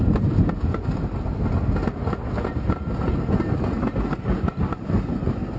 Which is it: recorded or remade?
recorded